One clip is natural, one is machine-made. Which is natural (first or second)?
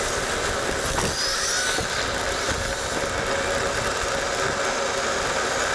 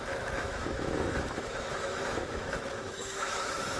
first